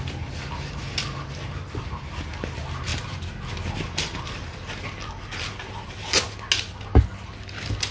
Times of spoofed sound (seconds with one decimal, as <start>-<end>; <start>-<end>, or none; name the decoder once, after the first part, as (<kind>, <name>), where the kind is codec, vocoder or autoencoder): none

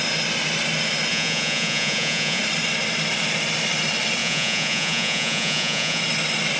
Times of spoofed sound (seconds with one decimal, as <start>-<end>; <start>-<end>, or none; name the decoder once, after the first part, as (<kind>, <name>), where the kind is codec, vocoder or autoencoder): 1.1-2.4 (vocoder, Vocos); 4.2-6.0

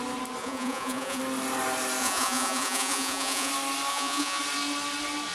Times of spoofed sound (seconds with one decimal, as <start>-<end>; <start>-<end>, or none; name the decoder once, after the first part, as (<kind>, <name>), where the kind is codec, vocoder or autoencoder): 0.4-1.2 (vocoder, Vocos); 2.0-3.5; 3.9-4.4

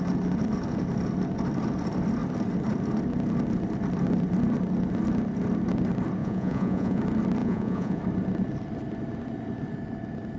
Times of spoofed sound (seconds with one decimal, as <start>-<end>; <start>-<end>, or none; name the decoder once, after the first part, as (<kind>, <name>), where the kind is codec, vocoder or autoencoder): 6.2-7.0 (vocoder, Vocos); 7.4-8.0